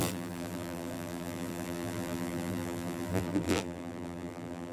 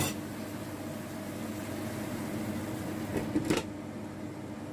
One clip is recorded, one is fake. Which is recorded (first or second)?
second